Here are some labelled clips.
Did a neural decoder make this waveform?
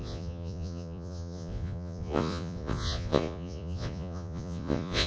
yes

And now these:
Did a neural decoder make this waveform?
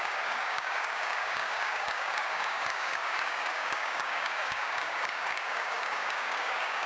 yes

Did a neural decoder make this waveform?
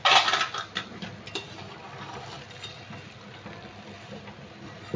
no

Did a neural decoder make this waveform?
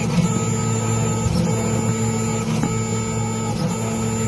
no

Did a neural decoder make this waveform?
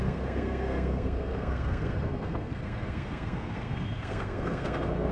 yes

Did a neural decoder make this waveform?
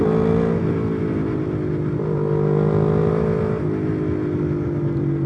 no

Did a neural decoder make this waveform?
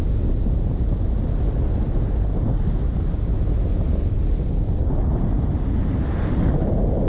no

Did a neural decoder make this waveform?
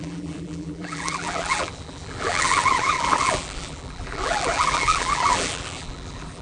yes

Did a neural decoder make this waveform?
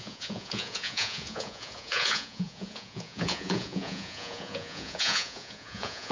yes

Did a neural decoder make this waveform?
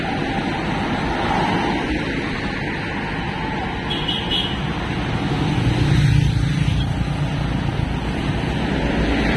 no